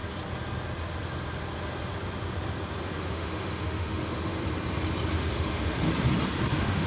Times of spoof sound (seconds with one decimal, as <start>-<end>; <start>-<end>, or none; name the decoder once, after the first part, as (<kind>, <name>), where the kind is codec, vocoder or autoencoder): 3.0-4.4 (autoencoder, DAC-VAE); 5.1-5.9; 6.5-6.9